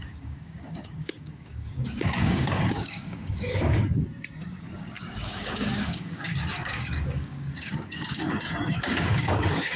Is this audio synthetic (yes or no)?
yes